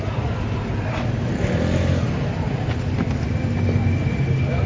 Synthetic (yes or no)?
no